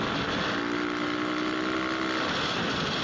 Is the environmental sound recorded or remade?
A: recorded